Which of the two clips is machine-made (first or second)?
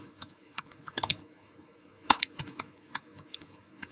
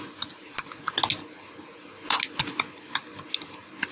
first